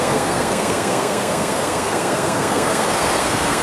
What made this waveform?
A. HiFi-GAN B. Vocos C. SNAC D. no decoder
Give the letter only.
C